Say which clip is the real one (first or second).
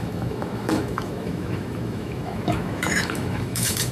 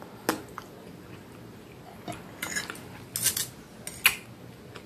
second